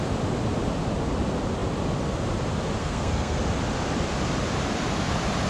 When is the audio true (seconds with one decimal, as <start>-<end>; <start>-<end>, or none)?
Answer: 0.0-2.8; 3.4-5.5